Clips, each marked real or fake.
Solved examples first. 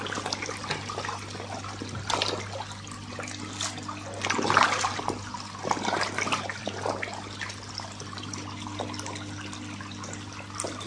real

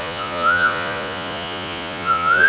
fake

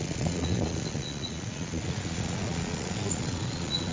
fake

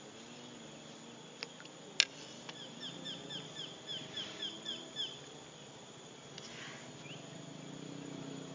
real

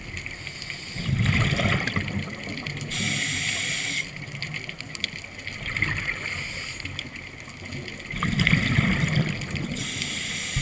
real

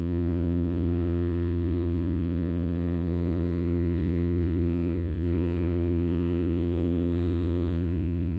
fake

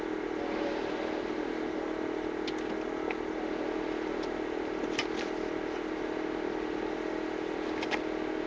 real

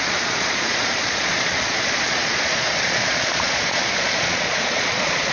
fake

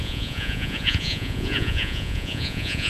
fake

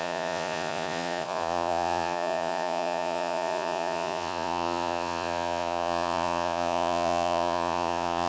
fake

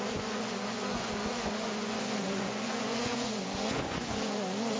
fake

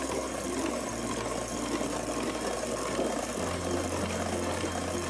real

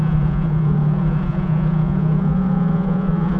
fake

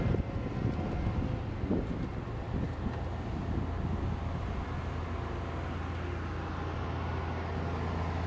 real